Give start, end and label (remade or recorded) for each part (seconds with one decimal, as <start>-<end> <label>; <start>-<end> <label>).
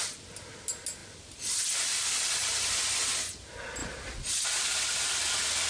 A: 0.0-5.7 recorded